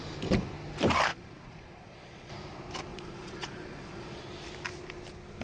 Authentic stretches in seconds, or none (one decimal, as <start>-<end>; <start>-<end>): 0.0-1.1; 2.3-2.9; 4.2-5.4